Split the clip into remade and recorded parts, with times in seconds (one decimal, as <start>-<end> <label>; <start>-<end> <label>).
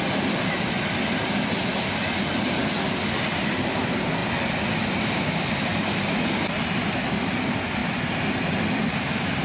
0.0-9.4 recorded